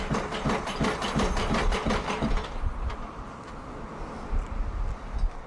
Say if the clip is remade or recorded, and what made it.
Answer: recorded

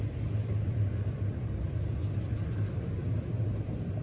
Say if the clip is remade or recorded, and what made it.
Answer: remade, vocoder, BigVGAN v2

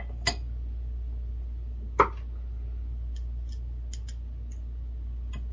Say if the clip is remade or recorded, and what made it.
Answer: recorded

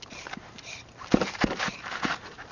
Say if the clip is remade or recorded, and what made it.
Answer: remade, vocoder, BigVGAN v2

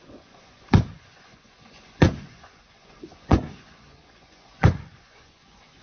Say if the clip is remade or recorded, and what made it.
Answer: remade, vocoder, Vocos